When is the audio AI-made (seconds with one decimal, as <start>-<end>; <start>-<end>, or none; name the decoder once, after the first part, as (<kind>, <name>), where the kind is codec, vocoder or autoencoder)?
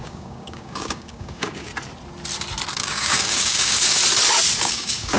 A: 0.0-1.7 (codec, DAC); 2.7-4.0; 4.6-5.2